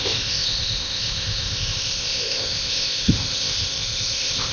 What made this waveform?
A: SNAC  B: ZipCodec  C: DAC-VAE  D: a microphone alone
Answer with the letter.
B